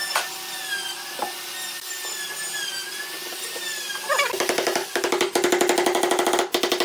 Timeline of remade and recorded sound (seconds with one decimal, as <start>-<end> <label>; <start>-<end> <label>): 0.0-6.8 recorded